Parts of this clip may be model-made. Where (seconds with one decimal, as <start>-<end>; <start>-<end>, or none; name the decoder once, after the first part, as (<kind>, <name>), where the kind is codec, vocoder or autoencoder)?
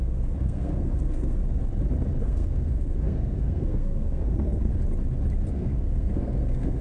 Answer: 0.0-1.4 (codec, SNAC); 2.2-4.7; 5.5-6.8